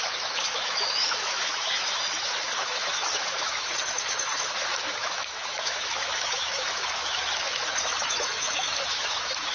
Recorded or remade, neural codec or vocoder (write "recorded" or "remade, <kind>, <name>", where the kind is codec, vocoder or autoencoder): remade, autoencoder, DAC-VAE